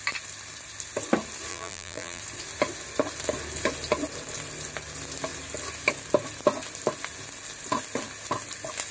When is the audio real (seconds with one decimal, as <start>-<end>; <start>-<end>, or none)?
0.0-1.5; 2.2-8.9